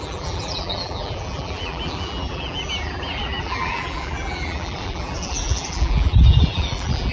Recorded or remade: remade